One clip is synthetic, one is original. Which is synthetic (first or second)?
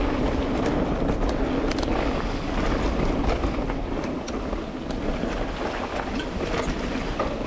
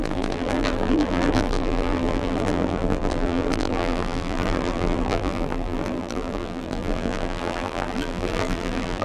second